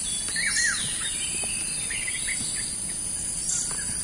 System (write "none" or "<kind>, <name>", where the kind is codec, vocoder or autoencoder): none